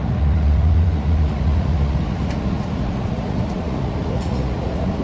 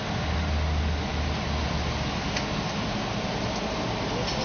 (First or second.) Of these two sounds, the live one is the second